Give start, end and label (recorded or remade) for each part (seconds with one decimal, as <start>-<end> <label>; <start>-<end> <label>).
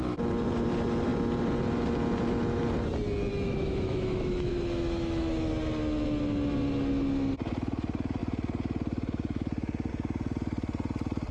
0.0-3.3 recorded; 3.3-5.5 remade; 5.5-11.3 recorded